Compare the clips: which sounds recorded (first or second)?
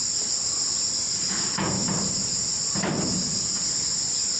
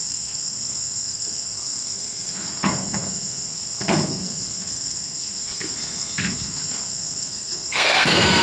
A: first